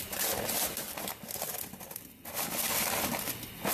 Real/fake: real